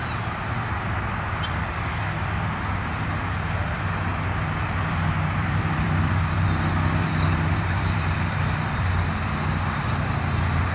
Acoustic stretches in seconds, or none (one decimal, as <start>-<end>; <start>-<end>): 0.0-4.1; 9.1-10.7